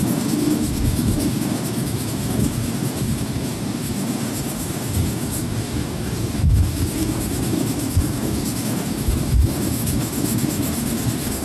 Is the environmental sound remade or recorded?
remade